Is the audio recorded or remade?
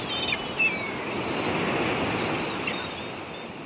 recorded